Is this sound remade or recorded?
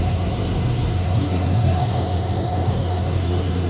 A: remade